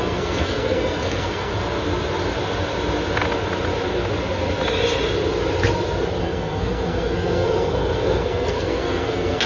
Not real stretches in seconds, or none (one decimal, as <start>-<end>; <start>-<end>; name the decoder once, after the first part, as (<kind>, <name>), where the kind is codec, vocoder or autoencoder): 0.0-1.5 (codec, SNAC); 6.2-9.5